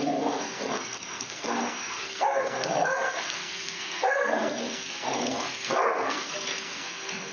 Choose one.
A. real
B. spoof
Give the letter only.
B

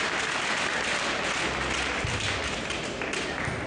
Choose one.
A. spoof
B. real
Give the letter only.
B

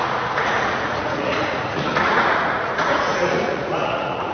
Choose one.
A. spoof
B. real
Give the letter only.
A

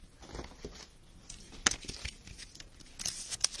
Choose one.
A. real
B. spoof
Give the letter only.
A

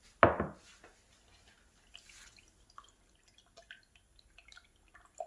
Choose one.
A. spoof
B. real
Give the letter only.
B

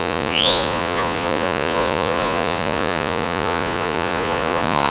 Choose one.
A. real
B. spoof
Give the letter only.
B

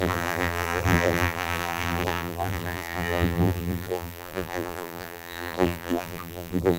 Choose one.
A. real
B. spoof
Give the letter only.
B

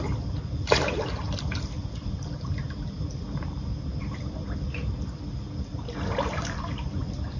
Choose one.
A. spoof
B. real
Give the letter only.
B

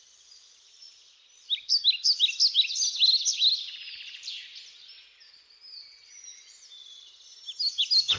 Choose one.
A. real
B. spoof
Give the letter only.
A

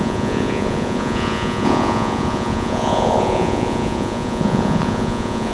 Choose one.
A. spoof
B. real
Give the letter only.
A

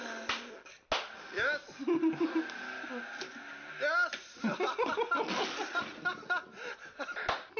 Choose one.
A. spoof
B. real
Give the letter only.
B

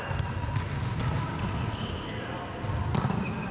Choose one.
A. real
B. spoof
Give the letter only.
A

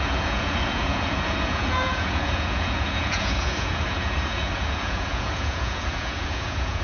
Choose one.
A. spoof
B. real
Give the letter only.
A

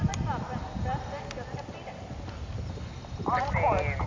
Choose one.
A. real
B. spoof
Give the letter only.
A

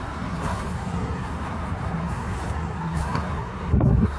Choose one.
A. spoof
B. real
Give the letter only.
A